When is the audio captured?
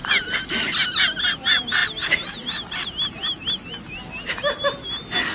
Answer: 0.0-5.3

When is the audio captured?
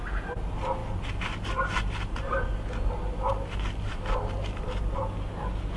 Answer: 0.0-5.8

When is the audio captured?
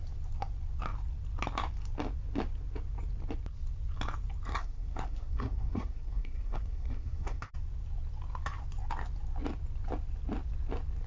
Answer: 0.0-4.5; 7.5-11.1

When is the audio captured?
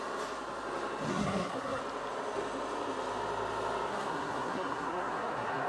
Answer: 0.0-1.1; 1.8-3.9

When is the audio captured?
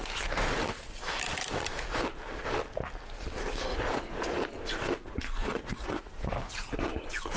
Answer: 0.0-3.7; 4.4-5.4; 6.3-7.4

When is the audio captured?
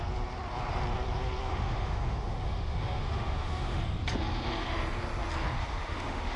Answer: 0.0-1.5; 3.8-5.7